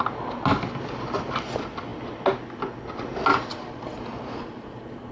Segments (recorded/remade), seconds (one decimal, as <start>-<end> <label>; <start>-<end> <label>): 0.0-5.1 recorded